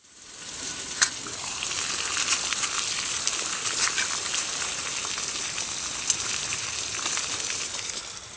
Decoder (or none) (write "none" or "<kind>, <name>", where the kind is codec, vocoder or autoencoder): none